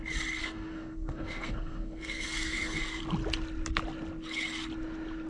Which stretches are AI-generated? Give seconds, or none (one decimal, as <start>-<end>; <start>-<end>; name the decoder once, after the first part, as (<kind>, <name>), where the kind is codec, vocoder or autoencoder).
0.4-3.0 (codec, SNAC)